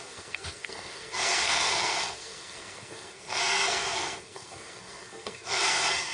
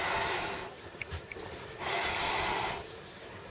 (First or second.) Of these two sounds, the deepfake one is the first